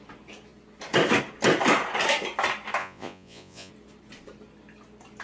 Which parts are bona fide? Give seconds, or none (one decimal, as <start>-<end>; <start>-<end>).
0.0-2.8; 3.7-5.2